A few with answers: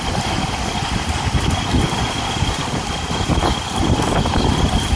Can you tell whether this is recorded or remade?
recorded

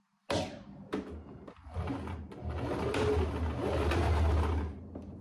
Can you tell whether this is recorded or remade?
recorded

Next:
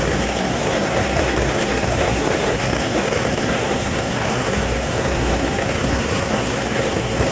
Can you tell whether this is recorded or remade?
remade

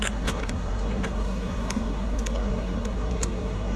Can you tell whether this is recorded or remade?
remade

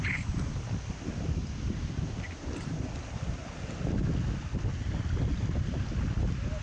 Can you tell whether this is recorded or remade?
recorded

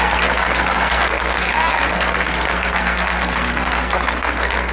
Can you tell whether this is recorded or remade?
remade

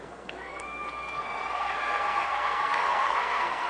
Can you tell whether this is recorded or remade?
remade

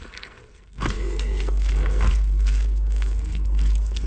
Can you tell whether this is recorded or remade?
remade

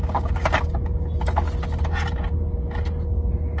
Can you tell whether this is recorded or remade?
recorded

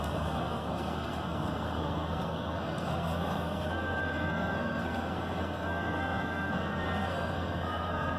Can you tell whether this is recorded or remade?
remade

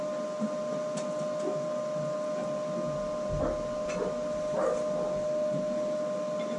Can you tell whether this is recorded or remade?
recorded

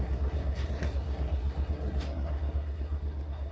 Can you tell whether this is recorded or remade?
remade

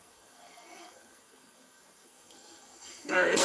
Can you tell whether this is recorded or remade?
remade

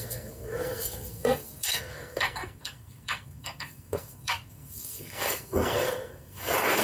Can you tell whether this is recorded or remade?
remade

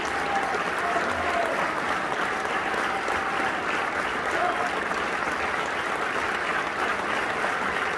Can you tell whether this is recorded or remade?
recorded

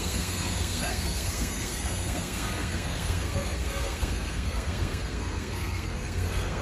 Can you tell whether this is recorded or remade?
remade